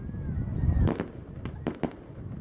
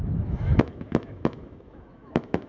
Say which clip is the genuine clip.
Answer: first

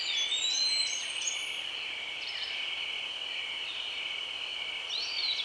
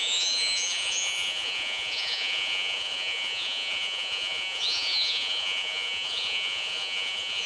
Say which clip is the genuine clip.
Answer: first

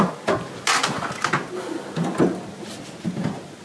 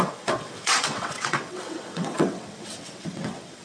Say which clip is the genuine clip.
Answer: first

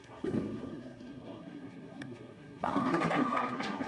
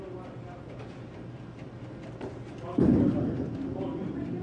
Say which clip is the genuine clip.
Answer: second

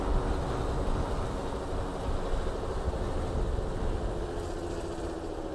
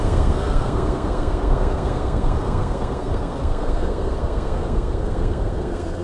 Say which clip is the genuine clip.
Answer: first